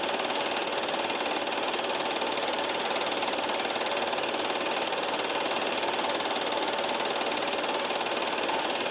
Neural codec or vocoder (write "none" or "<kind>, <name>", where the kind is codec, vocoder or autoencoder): none